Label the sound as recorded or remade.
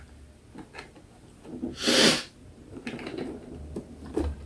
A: recorded